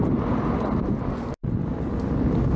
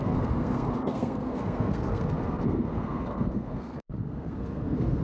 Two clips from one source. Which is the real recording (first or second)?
first